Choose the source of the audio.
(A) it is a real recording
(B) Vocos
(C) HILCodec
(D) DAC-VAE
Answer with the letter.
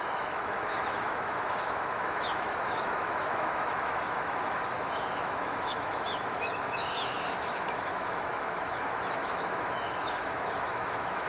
D